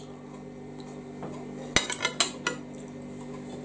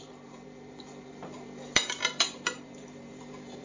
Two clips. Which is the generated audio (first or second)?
second